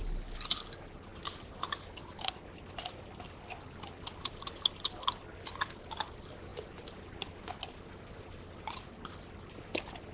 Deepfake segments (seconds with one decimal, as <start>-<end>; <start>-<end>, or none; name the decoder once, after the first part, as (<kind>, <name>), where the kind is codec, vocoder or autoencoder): none